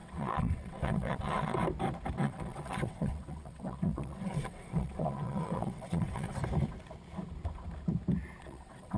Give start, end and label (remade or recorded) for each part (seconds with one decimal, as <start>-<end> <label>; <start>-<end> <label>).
0.0-1.6 remade; 1.6-2.2 recorded; 2.2-6.4 remade; 6.4-8.4 recorded; 8.4-9.0 remade